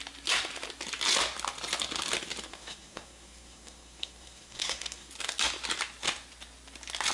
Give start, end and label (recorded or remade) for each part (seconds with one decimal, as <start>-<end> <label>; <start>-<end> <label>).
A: 0.0-2.5 recorded; 2.5-5.1 remade; 5.1-7.1 recorded